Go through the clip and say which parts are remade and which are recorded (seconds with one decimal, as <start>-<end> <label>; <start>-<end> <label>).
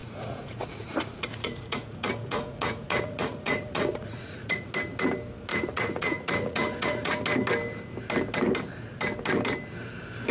0.0-4.7 remade; 4.7-5.5 recorded; 5.5-7.2 remade; 7.2-10.3 recorded